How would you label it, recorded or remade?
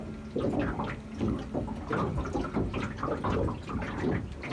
recorded